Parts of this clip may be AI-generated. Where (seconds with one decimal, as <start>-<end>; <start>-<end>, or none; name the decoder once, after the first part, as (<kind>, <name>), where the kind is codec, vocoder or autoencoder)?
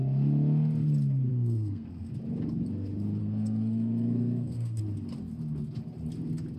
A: 1.3-2.1 (codec, SNAC); 3.2-4.8